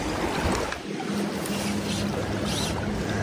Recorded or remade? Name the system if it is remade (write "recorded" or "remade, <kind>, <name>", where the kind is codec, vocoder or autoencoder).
recorded